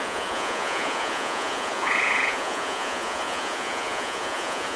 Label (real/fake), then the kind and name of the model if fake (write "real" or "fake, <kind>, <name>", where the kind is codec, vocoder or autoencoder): fake, vocoder, Vocos